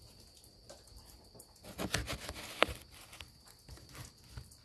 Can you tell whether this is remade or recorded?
recorded